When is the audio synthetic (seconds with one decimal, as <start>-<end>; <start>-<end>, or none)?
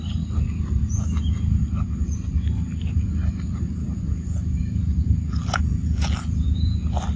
none